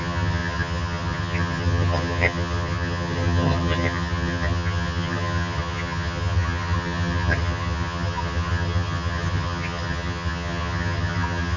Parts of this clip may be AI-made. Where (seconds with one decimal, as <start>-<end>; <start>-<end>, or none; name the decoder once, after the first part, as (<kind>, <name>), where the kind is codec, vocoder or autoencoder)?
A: 0.0-11.6 (vocoder, HiFi-GAN)

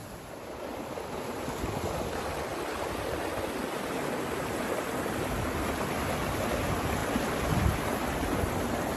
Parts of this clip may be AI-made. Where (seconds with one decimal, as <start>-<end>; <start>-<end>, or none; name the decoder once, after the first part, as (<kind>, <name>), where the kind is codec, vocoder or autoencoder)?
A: 7.0-7.8 (vocoder, BigVGAN v2)

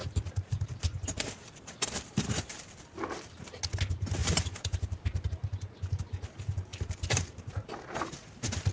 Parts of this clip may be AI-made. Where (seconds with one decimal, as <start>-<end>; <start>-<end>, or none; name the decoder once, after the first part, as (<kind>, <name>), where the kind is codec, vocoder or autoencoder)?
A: 0.5-2.9 (vocoder, BigVGAN v2); 4.2-5.3; 6.7-7.7